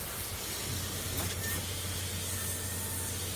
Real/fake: real